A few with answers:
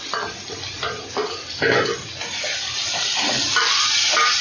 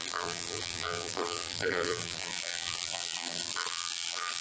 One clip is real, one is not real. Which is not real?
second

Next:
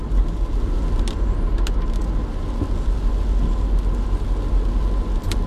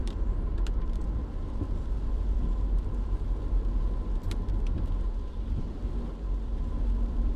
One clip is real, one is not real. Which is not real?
second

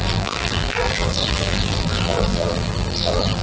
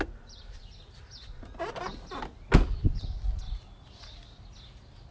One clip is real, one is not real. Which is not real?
first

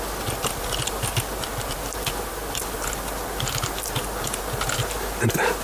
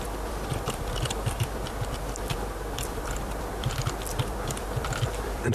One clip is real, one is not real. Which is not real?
second